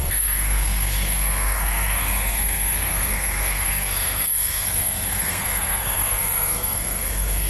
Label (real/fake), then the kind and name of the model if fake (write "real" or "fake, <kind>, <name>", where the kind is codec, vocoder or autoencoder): fake, codec, SNAC